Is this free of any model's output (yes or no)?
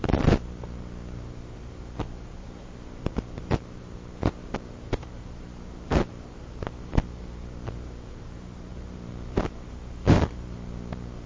no